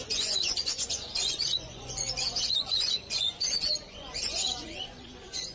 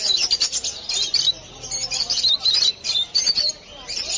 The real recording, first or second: second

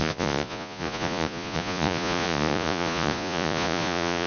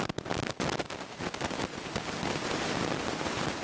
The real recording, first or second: second